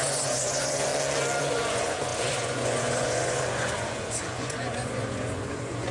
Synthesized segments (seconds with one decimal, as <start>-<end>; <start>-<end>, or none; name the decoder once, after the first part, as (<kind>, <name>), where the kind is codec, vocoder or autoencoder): 0.0-0.9 (vocoder, Vocos); 1.4-5.9